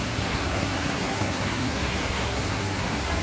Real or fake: fake